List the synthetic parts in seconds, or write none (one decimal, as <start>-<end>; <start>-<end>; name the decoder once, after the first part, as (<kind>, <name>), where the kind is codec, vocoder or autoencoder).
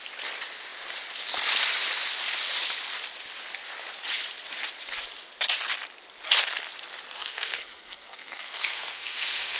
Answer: 7.2-9.6 (codec, SNAC)